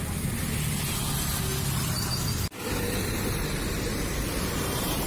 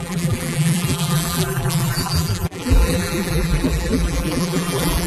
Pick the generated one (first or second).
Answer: second